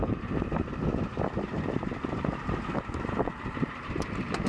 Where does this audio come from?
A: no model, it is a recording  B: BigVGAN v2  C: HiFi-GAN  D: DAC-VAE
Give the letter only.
B